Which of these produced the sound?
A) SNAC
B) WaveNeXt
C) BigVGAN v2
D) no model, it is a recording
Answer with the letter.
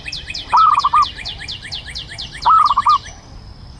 D